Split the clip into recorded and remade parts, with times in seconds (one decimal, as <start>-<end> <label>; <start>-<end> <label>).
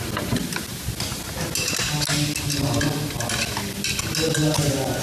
0.0-5.0 recorded